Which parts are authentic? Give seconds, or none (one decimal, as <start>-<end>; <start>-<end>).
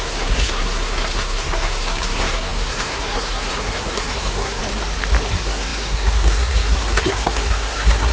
4.6-5.3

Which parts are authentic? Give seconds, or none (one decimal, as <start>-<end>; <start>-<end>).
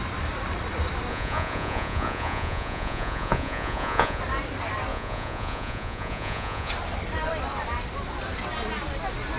0.0-1.1; 4.2-4.9; 6.7-9.4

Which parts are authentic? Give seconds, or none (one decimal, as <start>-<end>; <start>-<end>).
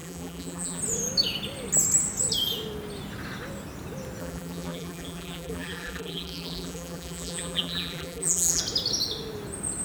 0.8-4.2; 8.6-9.8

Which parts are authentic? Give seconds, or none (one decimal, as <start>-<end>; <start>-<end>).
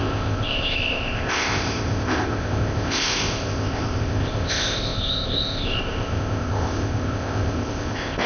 none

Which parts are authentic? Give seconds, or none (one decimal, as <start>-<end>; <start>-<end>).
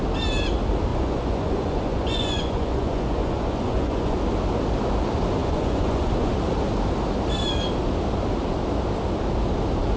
0.0-0.9; 4.2-5.4; 6.3-10.0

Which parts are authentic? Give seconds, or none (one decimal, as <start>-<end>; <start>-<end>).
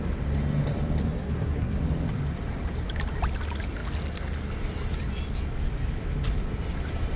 0.0-1.0; 1.8-7.2